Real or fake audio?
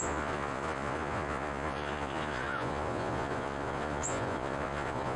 fake